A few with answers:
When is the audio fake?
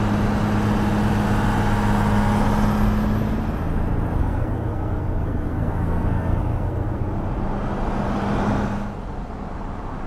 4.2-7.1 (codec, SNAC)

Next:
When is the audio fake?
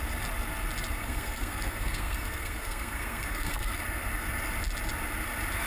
1.0-3.8 (codec, SNAC)